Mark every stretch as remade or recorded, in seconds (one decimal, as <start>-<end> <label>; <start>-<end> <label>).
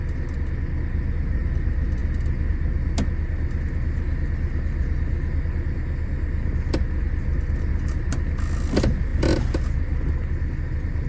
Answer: 0.0-11.1 recorded